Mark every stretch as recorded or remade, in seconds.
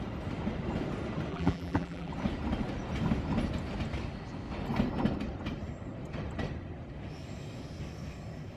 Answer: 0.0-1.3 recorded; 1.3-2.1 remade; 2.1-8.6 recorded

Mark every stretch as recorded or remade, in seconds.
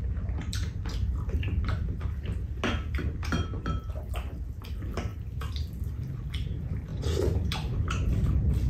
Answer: 0.0-6.9 recorded; 6.9-7.9 remade; 7.9-8.7 recorded